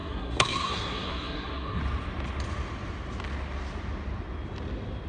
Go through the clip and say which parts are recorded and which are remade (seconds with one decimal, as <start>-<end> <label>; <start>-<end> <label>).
0.0-1.8 remade; 1.8-5.1 recorded